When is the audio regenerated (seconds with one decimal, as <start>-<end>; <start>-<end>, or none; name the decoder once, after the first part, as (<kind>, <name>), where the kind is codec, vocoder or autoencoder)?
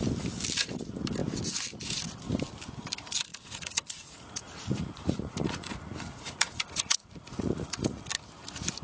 3.3-8.0 (vocoder, Vocos)